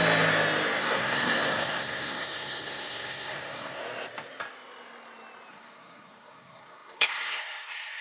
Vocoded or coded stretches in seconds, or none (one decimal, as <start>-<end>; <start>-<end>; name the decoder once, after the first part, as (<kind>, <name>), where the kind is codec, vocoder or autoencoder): 0.8-3.8 (codec, SNAC); 5.5-8.0